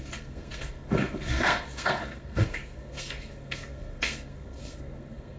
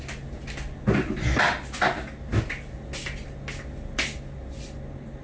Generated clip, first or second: first